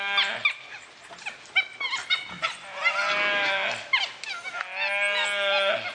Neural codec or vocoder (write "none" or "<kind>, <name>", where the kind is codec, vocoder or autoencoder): none